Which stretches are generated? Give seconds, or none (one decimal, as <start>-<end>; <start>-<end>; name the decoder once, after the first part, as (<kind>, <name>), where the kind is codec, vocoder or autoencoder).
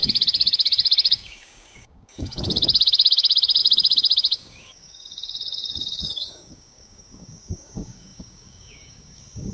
0.0-9.5 (codec, DAC)